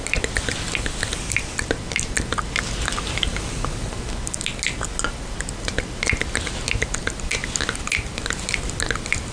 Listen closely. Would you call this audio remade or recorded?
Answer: recorded